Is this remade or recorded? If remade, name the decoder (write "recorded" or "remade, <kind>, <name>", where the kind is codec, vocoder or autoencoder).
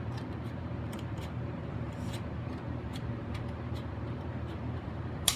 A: remade, vocoder, BigVGAN v2